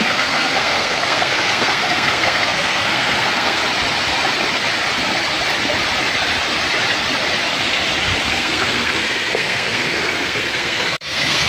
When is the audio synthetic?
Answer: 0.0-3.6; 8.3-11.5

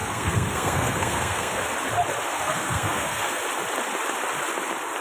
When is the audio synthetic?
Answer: 0.0-1.6; 2.3-3.4

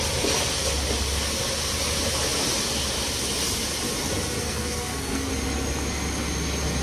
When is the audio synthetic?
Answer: 4.4-5.3

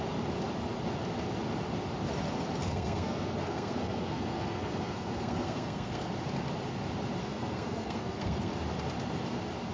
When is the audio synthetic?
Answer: 2.6-6.1; 7.2-8.5

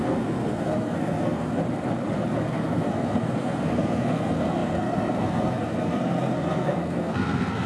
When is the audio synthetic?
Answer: 0.0-1.6; 2.4-7.7

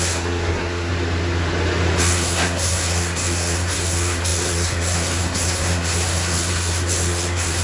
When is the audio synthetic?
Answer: 0.0-0.9; 2.0-7.6

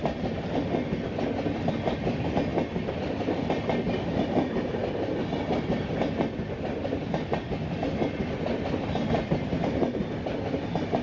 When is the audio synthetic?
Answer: none